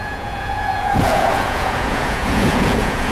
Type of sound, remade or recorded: remade